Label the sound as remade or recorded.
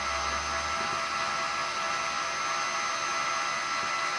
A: recorded